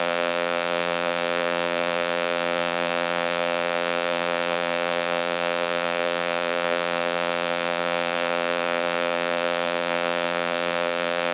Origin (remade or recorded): remade